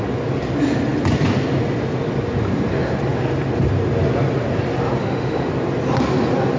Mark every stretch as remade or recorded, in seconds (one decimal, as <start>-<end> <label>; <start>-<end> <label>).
0.0-5.0 recorded; 5.0-5.5 remade; 5.5-6.6 recorded